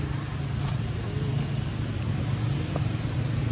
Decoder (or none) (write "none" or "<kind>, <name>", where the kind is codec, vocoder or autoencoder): none